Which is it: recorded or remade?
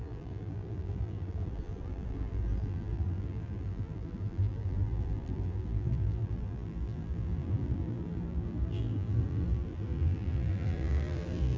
remade